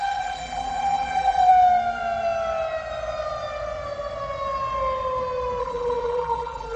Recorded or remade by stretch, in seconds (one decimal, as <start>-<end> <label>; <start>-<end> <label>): 0.0-1.5 remade; 1.5-5.6 recorded; 5.6-6.8 remade